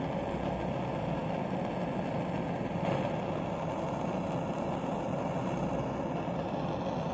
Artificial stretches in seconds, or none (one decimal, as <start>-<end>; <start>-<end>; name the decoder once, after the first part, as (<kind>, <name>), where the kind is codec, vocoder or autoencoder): none